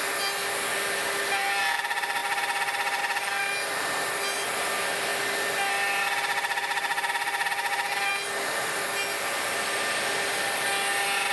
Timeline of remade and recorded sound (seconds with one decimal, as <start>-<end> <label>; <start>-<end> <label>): 0.0-11.3 recorded

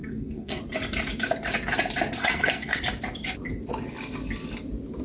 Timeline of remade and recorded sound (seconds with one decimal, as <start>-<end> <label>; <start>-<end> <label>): 0.0-0.6 remade; 0.6-2.2 recorded; 2.2-2.8 remade; 2.8-5.0 recorded

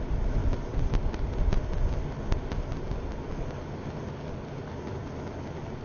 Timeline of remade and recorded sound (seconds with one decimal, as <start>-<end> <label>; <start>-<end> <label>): 0.0-5.8 recorded